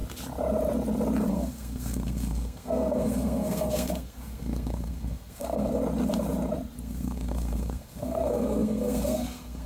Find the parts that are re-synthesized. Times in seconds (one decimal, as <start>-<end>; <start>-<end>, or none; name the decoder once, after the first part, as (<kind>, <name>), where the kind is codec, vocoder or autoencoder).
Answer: 1.3-5.8 (codec, SNAC); 6.8-9.7